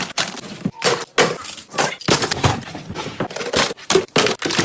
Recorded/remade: recorded